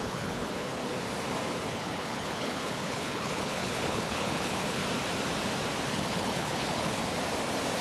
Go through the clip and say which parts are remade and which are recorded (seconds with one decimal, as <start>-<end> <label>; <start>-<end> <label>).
0.0-0.8 remade; 0.8-1.7 recorded; 1.7-4.8 remade; 4.8-5.9 recorded; 5.9-7.0 remade; 7.0-7.8 recorded